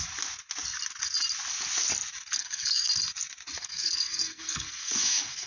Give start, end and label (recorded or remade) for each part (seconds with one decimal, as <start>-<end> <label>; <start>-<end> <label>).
0.0-2.4 recorded; 2.4-2.9 remade; 2.9-3.6 recorded; 3.6-5.5 remade